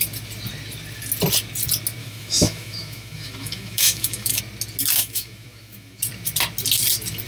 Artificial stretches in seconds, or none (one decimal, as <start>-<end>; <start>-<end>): 2.0-4.4; 5.0-6.0